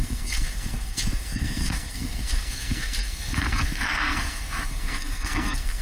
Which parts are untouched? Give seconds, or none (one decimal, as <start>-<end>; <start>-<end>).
none

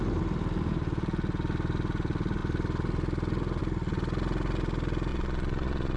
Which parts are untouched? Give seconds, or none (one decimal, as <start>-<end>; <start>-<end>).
0.0-5.1